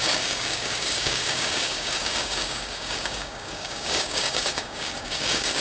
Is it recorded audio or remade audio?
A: remade